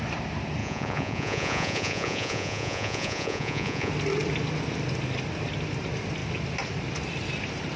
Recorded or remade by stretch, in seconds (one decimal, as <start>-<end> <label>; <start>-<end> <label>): 0.0-0.6 recorded; 0.6-3.9 remade; 3.9-7.8 recorded